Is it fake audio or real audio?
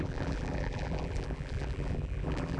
fake